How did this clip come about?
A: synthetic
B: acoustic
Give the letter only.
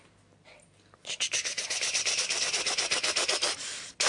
B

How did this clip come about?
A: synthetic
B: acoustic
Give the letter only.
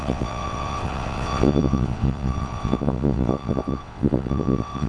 A